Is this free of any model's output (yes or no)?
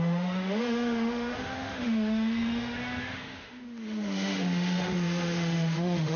no